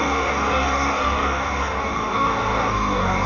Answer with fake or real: fake